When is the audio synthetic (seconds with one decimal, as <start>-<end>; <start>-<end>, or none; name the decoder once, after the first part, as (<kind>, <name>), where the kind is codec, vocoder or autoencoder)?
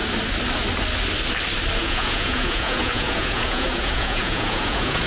1.8-5.1 (vocoder, Vocos)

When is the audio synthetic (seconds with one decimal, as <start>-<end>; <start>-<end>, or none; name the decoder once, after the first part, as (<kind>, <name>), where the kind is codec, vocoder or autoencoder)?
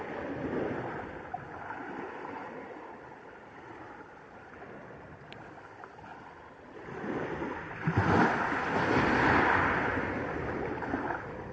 none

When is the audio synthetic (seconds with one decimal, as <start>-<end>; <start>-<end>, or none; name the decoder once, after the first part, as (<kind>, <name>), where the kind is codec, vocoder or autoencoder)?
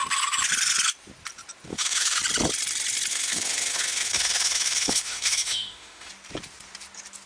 1.7-2.2 (autoencoder, DAC-VAE); 3.1-6.1